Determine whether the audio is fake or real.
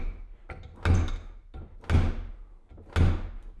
real